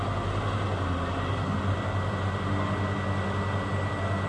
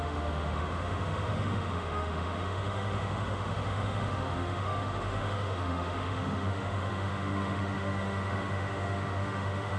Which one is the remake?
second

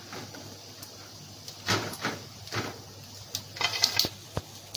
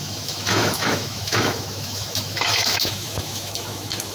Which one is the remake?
second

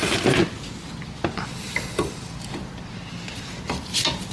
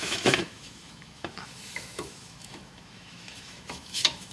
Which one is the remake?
second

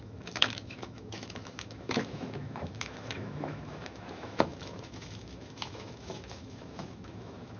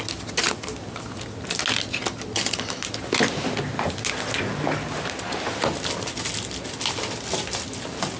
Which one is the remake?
first